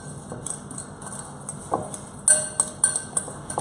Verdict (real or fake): real